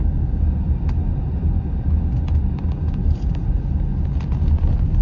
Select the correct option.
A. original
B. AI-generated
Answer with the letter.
A